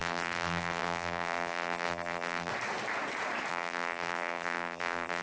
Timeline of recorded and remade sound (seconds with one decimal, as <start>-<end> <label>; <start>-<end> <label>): 0.0-2.5 remade; 2.5-3.5 recorded; 3.5-5.2 remade